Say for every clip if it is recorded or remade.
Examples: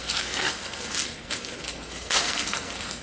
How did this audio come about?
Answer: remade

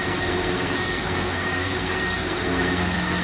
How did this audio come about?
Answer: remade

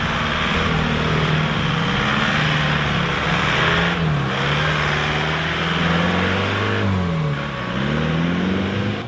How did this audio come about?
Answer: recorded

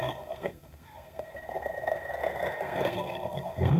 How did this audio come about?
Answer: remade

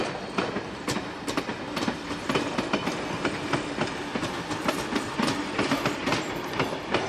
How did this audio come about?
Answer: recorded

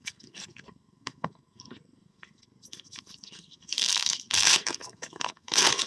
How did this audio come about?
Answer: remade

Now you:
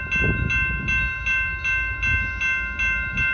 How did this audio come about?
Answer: recorded